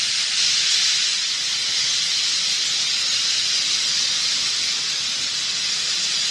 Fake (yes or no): no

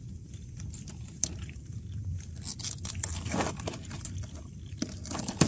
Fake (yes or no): no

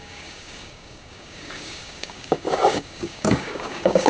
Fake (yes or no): yes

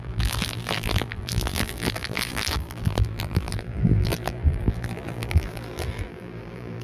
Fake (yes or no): yes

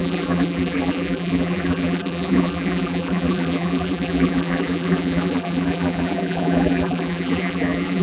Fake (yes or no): yes